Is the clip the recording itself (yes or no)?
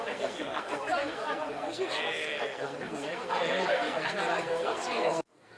no